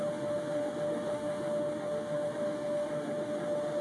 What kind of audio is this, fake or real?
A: fake